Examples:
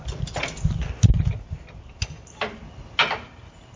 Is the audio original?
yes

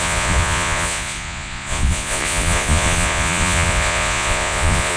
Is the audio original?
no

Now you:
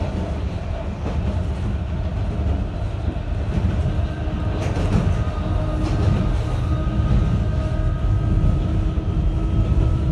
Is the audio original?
yes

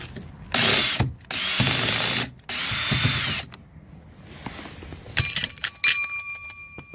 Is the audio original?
yes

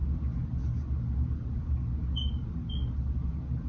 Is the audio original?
yes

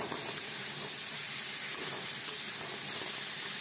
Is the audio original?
yes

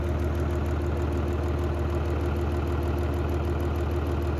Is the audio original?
yes